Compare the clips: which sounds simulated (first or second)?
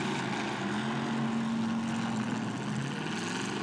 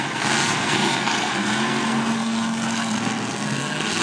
second